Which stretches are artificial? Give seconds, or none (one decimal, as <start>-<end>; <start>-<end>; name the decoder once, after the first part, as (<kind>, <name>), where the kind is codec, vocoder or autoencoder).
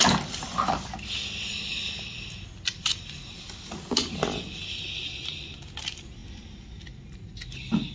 none